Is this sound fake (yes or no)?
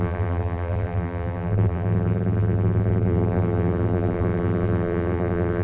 yes